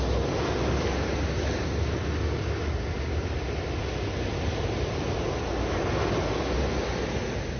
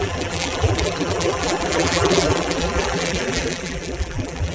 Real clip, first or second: first